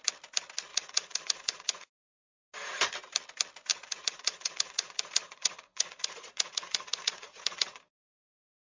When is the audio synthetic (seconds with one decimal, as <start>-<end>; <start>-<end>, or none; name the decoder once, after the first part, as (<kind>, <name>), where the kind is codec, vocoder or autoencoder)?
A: 0.7-1.9 (vocoder, Vocos); 3.7-7.8